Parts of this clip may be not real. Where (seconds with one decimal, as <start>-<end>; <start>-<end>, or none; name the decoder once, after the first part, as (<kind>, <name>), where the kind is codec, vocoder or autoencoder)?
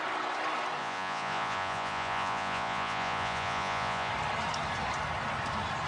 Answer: 0.8-4.1 (vocoder, Vocos)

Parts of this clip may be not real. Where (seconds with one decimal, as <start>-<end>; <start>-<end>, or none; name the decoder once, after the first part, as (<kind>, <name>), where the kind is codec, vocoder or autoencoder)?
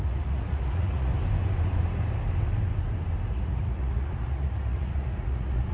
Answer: 0.0-1.1 (vocoder, Vocos); 3.3-5.7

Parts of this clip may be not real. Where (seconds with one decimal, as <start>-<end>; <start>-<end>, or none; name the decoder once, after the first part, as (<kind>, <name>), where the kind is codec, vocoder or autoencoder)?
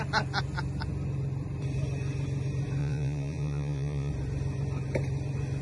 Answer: 2.8-4.1 (vocoder, Vocos)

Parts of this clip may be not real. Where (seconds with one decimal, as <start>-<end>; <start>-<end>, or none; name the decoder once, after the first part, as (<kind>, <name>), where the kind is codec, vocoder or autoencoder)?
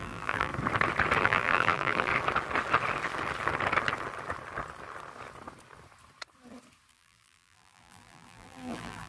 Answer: 0.0-0.5 (vocoder, BigVGAN v2); 1.2-2.1; 6.9-9.1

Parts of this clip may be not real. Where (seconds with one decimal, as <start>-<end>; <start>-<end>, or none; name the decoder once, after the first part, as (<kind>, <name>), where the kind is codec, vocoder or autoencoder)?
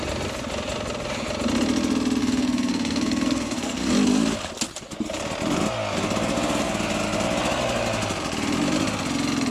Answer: 2.2-3.9 (codec, SNAC)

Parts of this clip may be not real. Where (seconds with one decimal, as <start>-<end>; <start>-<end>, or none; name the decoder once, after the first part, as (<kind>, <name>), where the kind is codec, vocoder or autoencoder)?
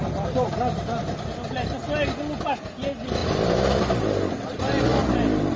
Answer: none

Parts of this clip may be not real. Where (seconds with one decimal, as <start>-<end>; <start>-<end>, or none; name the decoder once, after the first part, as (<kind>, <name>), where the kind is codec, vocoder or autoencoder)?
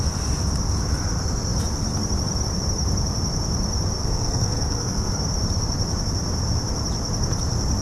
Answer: 4.0-5.1 (codec, SNAC)